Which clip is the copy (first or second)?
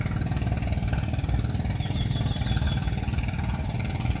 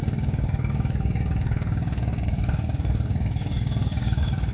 second